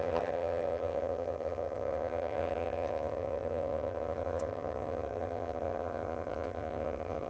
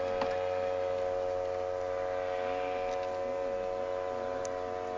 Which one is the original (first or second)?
second